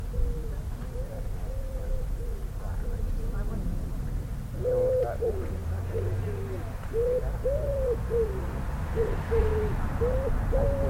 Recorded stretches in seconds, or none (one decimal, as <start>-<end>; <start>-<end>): 5.6-6.5